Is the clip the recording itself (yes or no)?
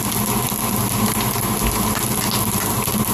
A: yes